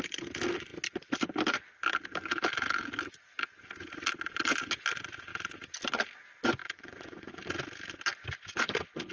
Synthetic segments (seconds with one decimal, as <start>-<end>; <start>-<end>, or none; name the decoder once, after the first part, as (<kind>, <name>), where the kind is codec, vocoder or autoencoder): 6.6-7.4 (vocoder, Vocos)